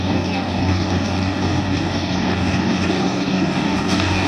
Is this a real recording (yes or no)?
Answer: no